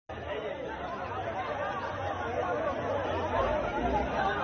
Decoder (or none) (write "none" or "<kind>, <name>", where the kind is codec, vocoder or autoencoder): none